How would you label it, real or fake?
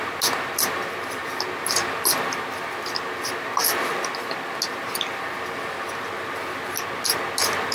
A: real